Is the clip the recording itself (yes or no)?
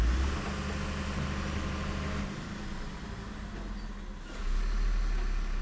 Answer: yes